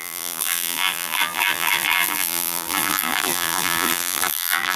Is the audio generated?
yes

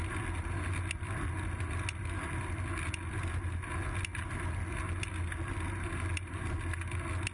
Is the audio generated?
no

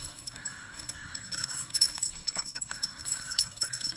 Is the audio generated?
yes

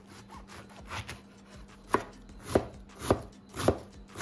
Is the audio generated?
no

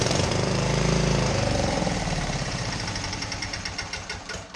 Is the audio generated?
yes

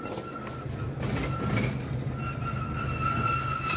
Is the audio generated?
no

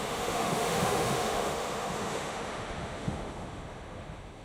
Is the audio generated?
yes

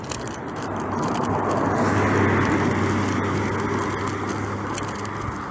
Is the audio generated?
no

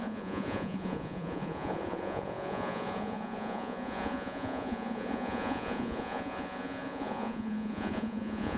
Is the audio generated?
yes